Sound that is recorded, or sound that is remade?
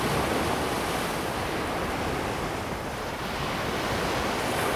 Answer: recorded